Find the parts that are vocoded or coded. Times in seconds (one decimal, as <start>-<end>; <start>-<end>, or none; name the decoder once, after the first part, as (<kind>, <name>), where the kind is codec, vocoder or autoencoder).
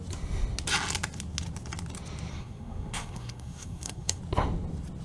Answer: 2.3-4.2 (codec, SNAC)